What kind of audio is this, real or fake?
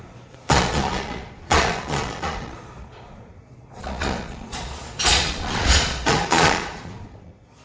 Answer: fake